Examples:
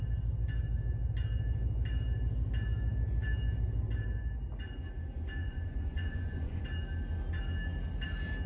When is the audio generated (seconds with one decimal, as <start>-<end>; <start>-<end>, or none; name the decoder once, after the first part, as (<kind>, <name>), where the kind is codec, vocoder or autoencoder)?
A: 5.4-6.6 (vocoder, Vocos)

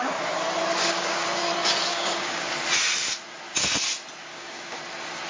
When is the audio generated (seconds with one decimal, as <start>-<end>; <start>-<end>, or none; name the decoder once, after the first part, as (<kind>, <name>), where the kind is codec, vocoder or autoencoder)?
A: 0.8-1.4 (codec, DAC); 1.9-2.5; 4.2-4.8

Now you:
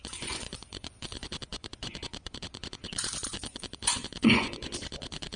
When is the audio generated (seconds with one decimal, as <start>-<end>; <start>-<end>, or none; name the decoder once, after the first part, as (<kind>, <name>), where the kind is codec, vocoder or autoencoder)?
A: 0.0-5.4 (vocoder, Vocos)

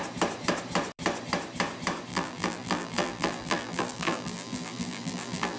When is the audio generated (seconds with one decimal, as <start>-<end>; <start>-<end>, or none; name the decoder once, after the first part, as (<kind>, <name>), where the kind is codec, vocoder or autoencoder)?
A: 2.1-5.6 (vocoder, BigVGAN v2)

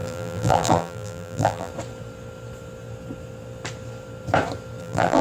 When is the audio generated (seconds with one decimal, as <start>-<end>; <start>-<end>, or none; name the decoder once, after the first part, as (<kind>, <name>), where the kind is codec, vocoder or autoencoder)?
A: 0.0-1.7 (vocoder, BigVGAN v2); 4.8-5.2